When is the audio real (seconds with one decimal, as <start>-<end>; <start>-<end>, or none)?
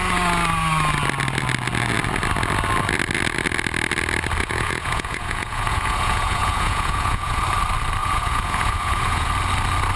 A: 0.0-4.4; 7.4-8.0; 9.3-10.0